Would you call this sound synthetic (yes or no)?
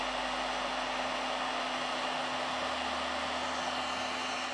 no